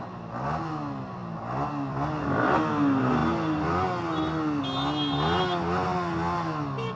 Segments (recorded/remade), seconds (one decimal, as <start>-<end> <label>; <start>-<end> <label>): 0.0-7.0 recorded